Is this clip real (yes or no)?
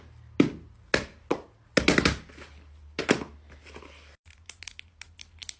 yes